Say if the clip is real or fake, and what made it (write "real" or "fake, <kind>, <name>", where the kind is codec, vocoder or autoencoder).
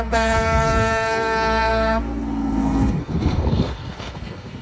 fake, codec, SNAC